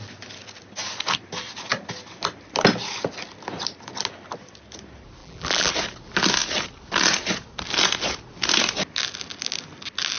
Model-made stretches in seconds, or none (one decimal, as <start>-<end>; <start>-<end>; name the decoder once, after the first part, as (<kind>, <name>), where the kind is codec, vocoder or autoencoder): 5.2-5.7 (vocoder, BigVGAN v2)